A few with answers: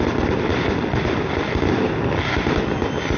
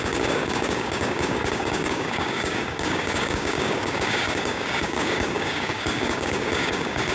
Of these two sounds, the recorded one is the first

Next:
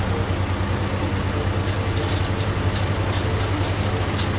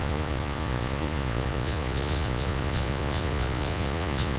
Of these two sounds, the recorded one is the first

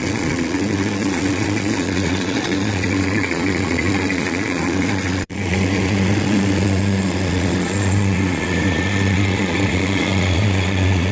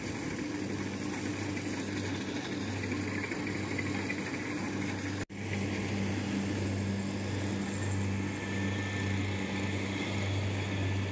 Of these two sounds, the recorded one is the second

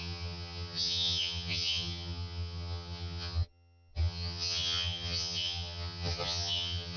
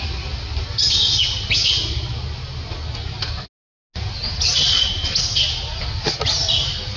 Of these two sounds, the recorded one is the second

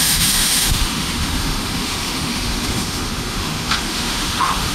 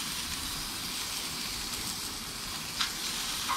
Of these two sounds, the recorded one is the second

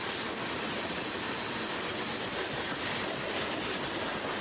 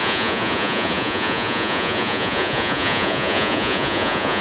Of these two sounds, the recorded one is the first